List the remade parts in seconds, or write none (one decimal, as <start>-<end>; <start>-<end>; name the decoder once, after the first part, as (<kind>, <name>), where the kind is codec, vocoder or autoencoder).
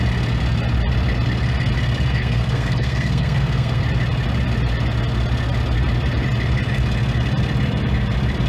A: 2.1-3.8 (codec, SNAC)